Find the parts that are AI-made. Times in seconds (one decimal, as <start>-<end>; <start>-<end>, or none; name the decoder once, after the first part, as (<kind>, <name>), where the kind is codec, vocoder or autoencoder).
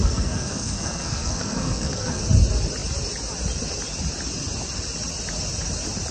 0.0-2.2 (codec, SNAC)